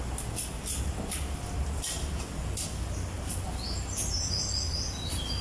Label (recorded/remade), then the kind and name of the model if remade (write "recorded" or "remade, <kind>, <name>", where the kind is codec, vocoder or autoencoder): recorded